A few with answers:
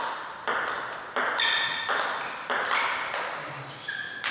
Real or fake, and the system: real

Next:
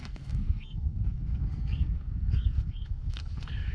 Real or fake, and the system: fake, codec, SNAC